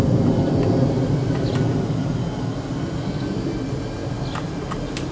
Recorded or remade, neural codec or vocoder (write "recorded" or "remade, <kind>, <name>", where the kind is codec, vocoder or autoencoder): recorded